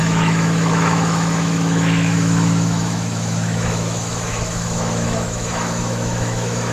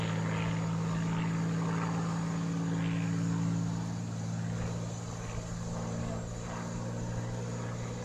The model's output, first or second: first